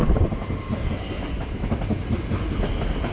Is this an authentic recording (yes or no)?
yes